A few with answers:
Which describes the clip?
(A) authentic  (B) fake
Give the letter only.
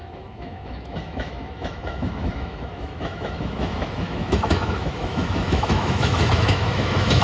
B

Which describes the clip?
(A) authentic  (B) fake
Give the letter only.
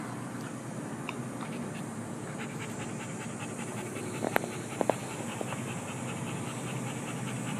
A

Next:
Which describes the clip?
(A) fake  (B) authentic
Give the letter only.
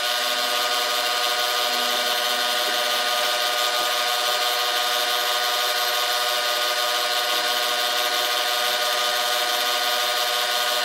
B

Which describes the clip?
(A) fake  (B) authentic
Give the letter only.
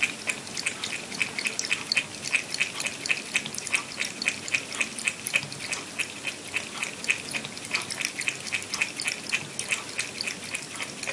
B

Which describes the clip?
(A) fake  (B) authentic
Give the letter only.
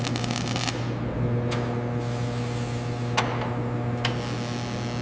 B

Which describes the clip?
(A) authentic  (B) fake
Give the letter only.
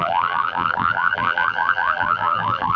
B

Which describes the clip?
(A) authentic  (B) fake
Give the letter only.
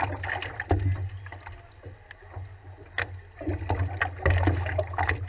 A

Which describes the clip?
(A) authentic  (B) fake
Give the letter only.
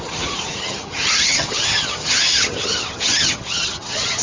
B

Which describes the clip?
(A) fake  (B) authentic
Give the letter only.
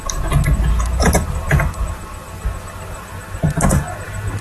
B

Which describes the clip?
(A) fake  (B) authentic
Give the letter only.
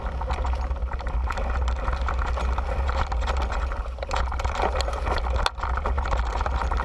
B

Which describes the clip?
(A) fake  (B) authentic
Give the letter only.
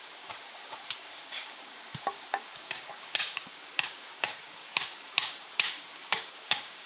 A